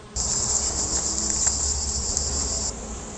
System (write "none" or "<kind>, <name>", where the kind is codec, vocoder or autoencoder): none